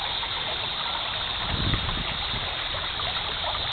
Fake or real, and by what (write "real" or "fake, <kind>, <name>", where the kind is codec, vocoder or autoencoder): real